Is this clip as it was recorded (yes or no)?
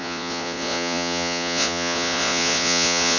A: no